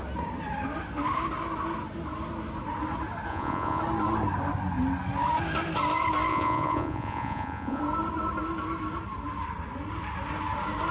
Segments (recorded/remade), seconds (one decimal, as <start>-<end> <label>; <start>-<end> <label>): 0.0-3.3 recorded; 3.3-3.8 remade; 3.8-6.3 recorded; 6.3-7.8 remade; 7.8-10.9 recorded